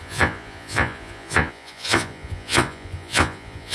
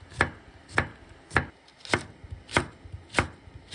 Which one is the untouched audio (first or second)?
second